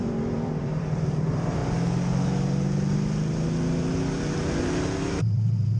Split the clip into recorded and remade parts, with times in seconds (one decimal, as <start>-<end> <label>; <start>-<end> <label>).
0.0-1.6 remade; 1.6-5.1 recorded; 5.1-5.8 remade